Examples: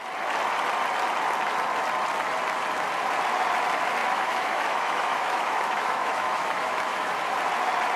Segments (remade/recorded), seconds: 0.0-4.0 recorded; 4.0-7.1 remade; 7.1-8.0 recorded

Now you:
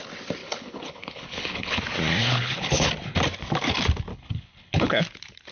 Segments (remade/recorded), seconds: 0.0-0.4 recorded; 0.4-1.8 remade; 1.8-2.2 recorded; 2.2-2.9 remade; 2.9-4.1 recorded; 4.1-5.0 remade; 5.0-5.5 recorded

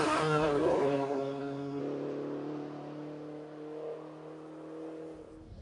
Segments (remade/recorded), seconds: 0.0-1.8 remade; 1.8-5.6 recorded